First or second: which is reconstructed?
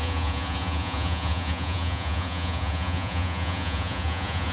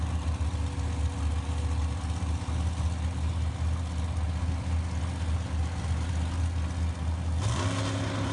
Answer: first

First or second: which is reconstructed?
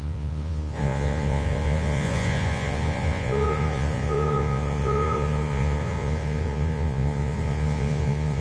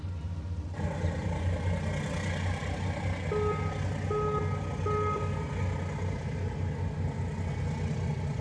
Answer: first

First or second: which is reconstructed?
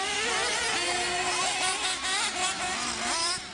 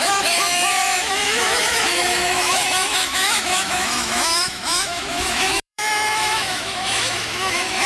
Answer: second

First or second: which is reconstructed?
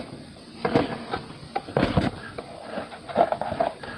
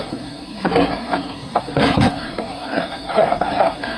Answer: second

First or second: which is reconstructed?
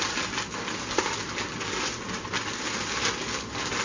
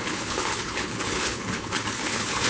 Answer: second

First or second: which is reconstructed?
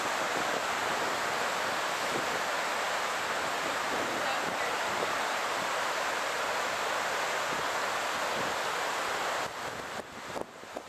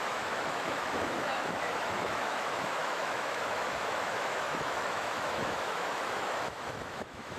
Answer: second